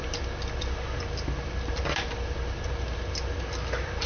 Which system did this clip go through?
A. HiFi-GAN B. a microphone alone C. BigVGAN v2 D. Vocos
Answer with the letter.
B